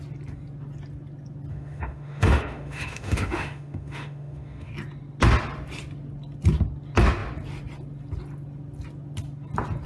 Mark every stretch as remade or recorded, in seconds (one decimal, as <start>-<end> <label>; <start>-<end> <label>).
0.0-1.5 recorded; 1.5-4.7 remade; 4.7-9.9 recorded